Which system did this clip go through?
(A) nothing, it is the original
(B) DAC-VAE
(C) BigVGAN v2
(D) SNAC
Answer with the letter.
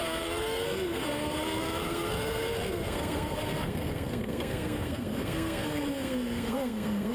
D